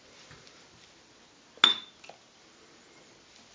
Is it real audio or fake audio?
real